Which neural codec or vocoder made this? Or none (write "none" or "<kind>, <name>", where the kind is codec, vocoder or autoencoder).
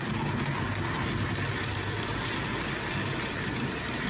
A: none